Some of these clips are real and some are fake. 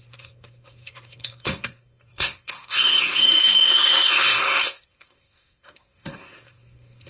fake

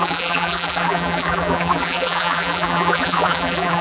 fake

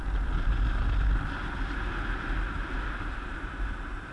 real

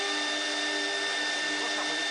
real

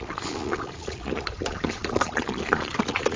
fake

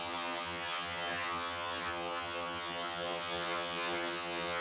fake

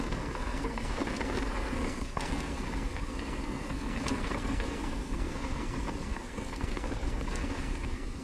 fake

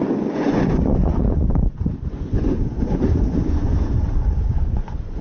fake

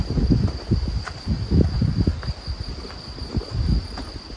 real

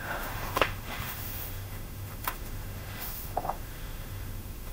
fake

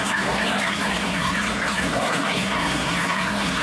fake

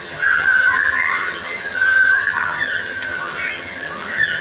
fake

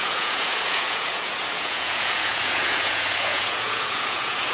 fake